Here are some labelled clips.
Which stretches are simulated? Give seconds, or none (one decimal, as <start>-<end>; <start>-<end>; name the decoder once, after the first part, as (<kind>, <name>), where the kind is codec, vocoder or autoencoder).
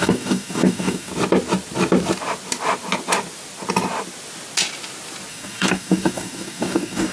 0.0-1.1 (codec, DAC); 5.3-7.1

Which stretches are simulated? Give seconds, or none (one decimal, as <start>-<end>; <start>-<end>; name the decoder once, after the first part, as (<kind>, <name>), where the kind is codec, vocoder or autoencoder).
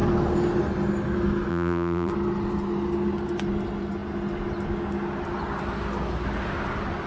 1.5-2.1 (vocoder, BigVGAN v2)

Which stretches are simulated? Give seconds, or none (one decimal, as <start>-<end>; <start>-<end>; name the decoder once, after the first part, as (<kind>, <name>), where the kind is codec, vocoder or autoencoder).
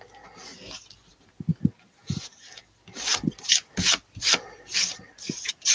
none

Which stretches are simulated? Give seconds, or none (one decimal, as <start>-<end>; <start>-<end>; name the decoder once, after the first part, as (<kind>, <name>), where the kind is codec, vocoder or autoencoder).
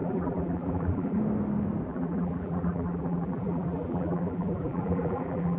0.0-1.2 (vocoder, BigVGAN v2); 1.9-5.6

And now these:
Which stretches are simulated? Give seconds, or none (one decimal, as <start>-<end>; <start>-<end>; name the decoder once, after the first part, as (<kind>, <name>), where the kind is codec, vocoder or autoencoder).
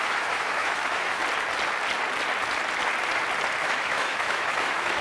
0.0-1.2 (autoencoder, DAC-VAE); 3.6-5.0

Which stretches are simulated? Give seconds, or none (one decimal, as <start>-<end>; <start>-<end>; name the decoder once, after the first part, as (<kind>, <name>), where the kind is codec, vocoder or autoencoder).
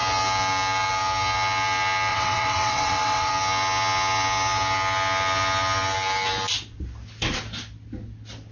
2.1-3.3 (vocoder, WaveNeXt)